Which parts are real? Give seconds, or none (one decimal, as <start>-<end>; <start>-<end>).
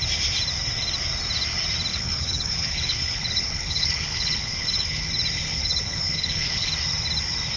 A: 0.0-1.9; 5.1-5.5; 6.7-7.6